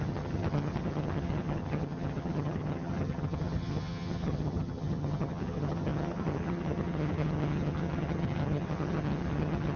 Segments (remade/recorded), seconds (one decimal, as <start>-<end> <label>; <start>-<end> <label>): 0.0-9.8 remade

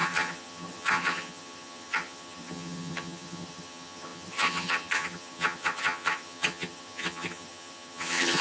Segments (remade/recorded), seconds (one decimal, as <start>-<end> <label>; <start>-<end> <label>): 0.0-8.4 remade

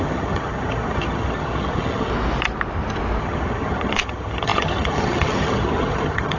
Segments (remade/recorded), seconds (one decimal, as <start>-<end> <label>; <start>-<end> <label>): 0.0-2.1 remade; 2.1-3.2 recorded; 3.2-6.4 remade

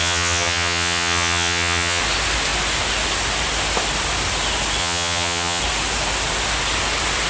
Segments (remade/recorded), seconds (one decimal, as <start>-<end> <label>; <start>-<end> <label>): 0.0-2.0 remade; 2.0-4.8 recorded; 4.8-5.6 remade; 5.6-7.3 recorded

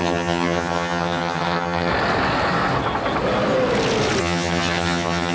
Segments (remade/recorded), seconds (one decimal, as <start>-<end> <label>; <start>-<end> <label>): 0.0-1.9 remade; 1.9-4.2 recorded; 4.2-5.3 remade

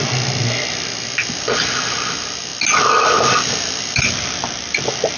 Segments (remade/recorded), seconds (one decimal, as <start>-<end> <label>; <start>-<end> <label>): 0.0-5.2 recorded